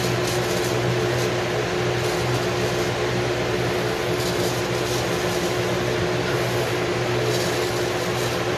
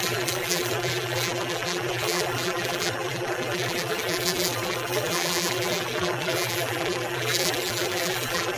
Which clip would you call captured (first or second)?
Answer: first